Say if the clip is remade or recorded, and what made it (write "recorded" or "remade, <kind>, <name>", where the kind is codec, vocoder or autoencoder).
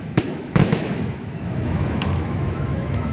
remade, autoencoder, DAC-VAE